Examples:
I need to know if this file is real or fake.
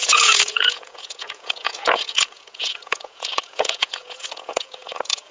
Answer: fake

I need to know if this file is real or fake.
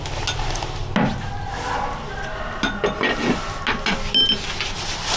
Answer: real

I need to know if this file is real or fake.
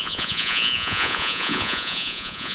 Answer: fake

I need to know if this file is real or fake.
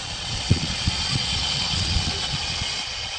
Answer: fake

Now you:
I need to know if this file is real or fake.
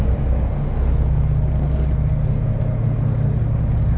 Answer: real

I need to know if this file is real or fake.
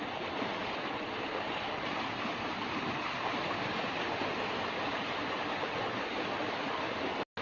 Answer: real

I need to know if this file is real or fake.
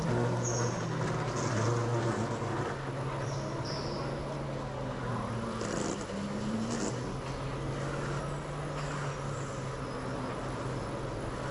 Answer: real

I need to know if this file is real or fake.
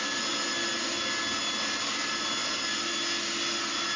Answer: real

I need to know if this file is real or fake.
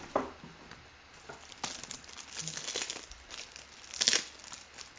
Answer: real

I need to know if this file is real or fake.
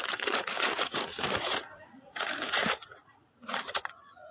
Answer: fake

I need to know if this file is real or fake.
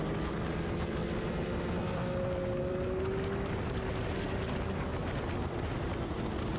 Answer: real